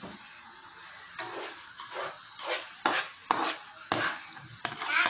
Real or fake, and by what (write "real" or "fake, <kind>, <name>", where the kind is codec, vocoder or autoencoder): real